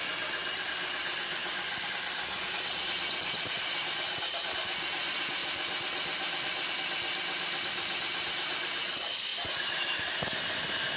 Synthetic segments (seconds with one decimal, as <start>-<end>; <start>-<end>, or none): none